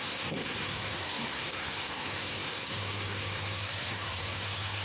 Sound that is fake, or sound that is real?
fake